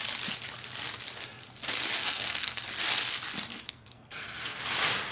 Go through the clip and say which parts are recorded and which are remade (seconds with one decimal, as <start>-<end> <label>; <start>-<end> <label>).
0.0-2.0 recorded; 2.0-2.6 remade; 2.6-3.5 recorded; 3.5-4.6 remade; 4.6-5.1 recorded